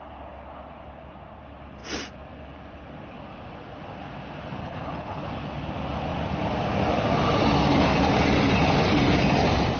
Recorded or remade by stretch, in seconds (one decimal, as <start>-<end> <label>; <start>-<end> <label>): 0.0-4.6 recorded; 4.6-5.2 remade; 5.2-9.8 recorded